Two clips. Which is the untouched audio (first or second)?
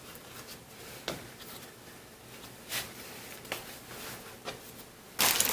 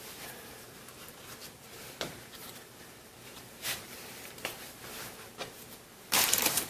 first